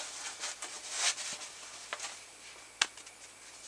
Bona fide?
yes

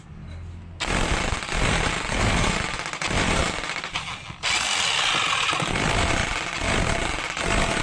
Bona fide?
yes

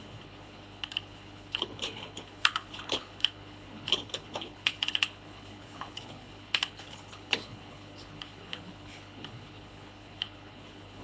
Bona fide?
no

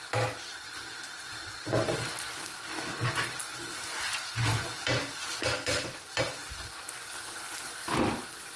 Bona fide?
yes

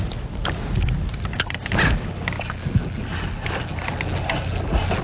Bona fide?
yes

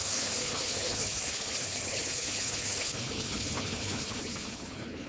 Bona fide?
no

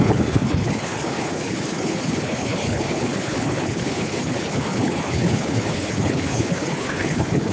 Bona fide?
no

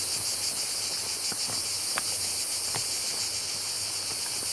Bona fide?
yes